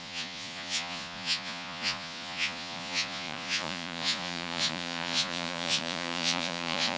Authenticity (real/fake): fake